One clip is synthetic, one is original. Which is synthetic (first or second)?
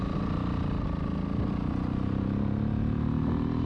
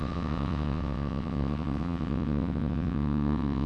second